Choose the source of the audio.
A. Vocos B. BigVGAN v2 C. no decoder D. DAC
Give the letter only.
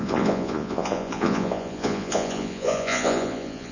A